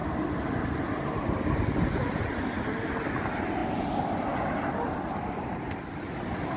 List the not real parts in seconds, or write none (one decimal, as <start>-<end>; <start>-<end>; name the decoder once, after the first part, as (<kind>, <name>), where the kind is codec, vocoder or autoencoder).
0.0-2.3 (vocoder, BigVGAN v2)